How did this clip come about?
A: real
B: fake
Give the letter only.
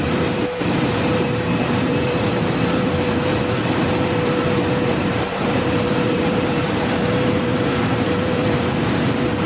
B